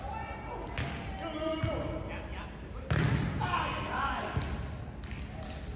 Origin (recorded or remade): recorded